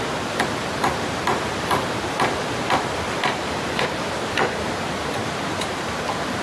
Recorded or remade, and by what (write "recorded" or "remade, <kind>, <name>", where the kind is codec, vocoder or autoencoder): remade, vocoder, BigVGAN v2